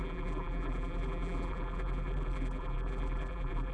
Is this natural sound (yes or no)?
no